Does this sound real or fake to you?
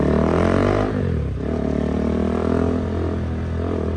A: real